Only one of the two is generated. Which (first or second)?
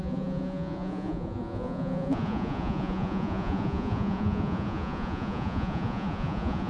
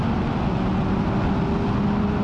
first